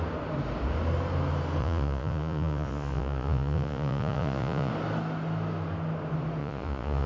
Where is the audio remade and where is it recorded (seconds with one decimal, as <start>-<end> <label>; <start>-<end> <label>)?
0.0-1.6 recorded; 1.6-4.7 remade; 4.7-6.4 recorded; 6.4-7.1 remade